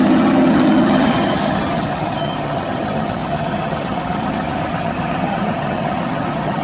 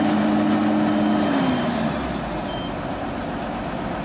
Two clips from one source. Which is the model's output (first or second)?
first